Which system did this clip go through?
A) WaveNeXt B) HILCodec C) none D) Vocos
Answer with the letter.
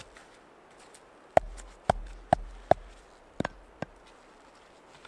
C